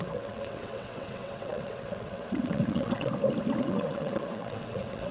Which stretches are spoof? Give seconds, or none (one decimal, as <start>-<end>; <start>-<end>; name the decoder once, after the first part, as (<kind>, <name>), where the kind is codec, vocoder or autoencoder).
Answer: 0.0-3.1 (vocoder, WaveNeXt); 3.6-5.1